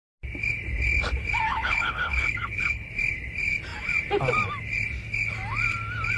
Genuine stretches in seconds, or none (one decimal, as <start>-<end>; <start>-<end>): 0.0-1.5; 2.9-6.2